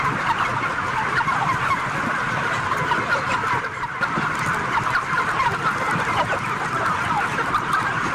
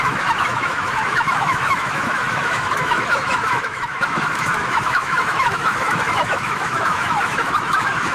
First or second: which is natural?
first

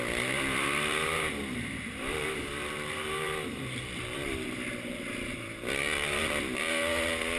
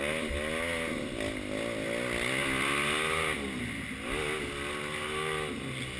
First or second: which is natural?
second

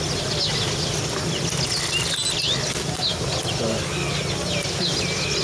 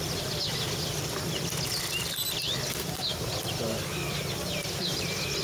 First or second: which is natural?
first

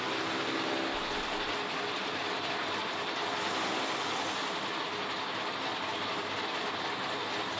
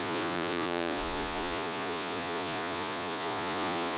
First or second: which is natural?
first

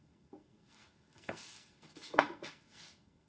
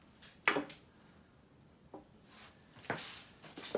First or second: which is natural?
second